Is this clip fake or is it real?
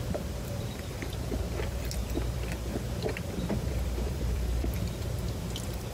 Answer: fake